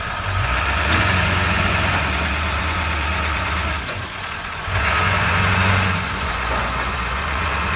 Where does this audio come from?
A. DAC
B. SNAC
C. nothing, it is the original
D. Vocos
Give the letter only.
D